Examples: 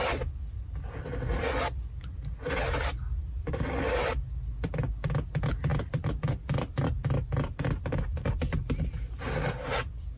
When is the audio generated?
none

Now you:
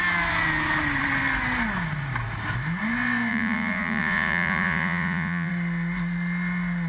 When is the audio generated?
3.3-5.5

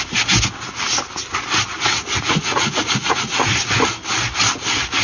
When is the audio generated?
1.7-3.5

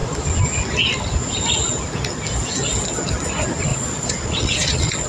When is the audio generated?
3.7-5.1

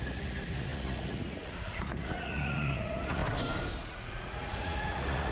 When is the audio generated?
0.0-3.2; 3.9-5.3

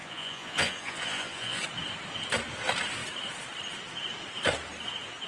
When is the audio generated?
0.0-1.6